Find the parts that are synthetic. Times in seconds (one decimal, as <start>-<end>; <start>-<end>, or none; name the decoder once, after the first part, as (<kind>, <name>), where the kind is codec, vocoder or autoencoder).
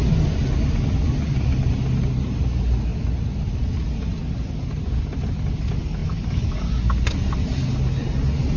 none